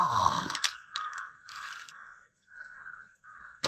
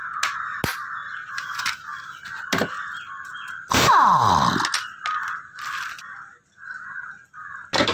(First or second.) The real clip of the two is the second